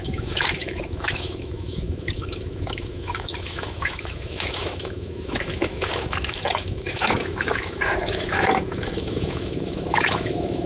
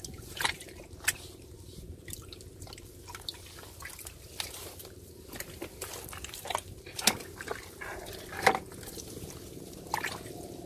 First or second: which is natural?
second